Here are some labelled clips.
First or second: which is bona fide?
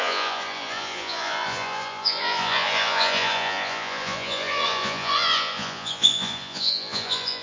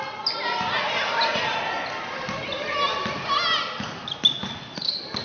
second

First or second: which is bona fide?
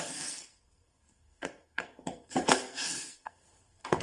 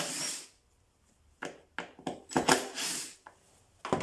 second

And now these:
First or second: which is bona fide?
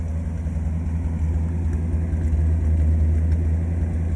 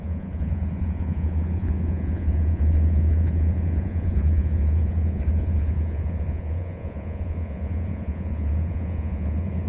first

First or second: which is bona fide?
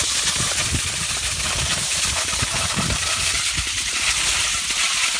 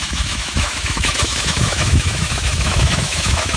first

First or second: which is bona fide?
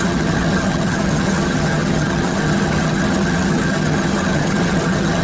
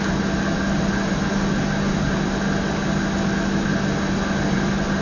second